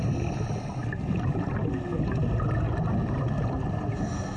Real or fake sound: real